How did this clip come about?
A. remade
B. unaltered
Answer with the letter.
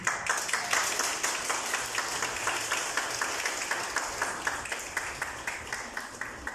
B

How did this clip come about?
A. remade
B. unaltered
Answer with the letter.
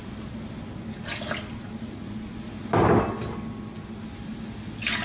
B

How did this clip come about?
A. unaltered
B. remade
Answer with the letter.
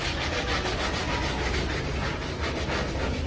A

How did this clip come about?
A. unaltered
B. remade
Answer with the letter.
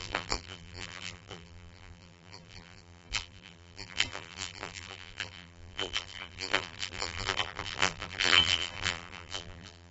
B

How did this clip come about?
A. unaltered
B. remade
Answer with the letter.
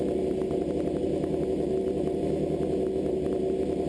A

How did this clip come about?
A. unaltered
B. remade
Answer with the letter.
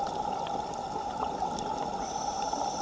A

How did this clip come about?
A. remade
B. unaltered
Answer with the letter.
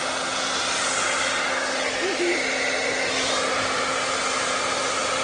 B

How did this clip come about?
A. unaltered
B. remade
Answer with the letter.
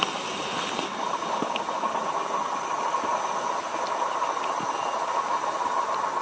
A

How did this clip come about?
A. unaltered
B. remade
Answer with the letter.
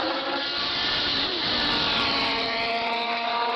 B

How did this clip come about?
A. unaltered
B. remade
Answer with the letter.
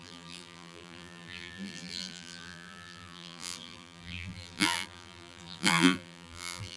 B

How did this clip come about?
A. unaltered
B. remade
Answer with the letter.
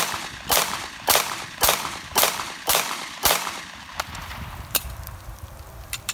B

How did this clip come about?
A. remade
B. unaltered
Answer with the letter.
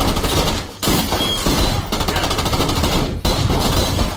A